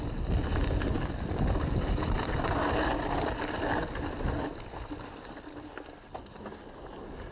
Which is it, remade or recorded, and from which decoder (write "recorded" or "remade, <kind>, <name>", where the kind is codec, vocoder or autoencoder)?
recorded